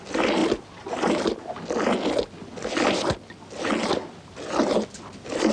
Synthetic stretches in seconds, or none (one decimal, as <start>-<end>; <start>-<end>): none